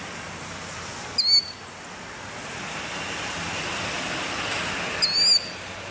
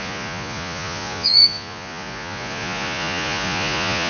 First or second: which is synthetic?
second